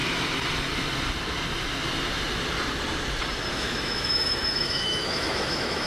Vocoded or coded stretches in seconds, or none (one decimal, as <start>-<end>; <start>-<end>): 3.5-5.9